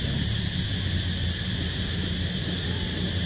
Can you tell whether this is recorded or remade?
recorded